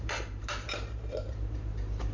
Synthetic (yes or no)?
yes